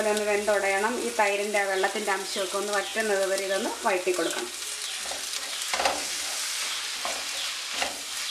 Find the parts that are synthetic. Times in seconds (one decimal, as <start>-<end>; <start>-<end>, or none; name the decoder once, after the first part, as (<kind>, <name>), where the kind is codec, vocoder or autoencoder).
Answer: none